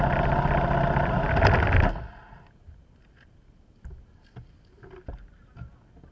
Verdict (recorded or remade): recorded